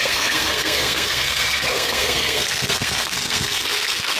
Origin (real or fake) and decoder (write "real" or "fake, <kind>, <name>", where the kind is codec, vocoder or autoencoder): fake, codec, SNAC